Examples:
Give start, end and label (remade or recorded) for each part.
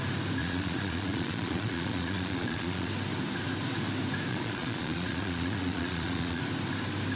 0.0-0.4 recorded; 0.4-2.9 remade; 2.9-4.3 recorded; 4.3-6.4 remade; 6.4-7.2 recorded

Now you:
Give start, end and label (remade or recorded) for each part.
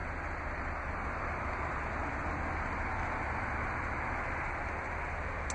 0.0-5.5 recorded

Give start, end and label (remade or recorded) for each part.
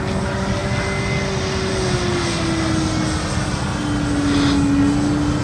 0.0-5.4 recorded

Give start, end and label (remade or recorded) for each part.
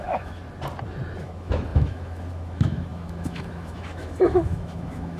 0.0-0.4 remade; 0.4-1.2 recorded; 1.2-5.2 remade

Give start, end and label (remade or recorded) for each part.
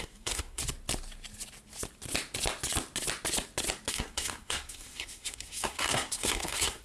0.0-0.6 remade; 0.6-3.9 recorded; 3.9-6.8 remade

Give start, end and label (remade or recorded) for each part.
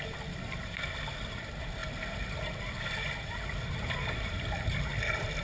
0.0-5.4 recorded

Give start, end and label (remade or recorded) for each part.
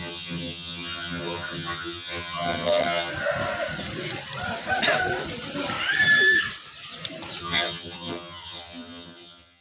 0.0-3.1 remade; 3.1-7.4 recorded; 7.4-9.6 remade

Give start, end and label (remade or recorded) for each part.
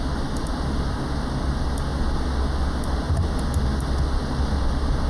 0.0-5.1 recorded